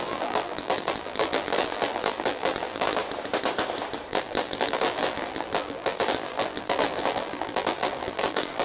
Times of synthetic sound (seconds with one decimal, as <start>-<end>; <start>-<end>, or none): 0.0-3.0; 4.1-8.6

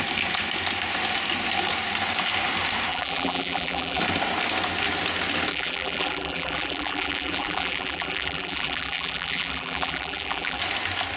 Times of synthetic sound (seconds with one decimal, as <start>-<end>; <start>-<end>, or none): 2.9-4.0; 5.5-10.6

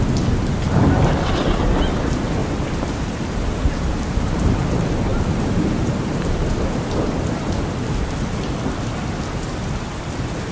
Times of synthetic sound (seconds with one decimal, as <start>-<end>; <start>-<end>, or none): 2.4-4.5; 5.1-7.6

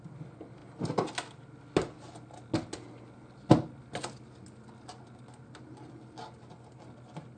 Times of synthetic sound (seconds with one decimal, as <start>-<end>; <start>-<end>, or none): none

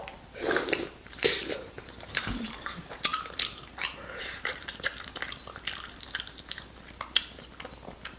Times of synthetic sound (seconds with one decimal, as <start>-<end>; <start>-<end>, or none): 0.0-3.1; 4.2-4.9

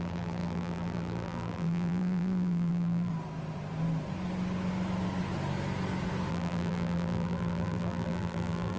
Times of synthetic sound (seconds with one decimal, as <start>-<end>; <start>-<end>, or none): 0.0-3.1; 6.3-8.8